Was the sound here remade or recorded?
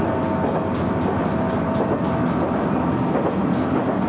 recorded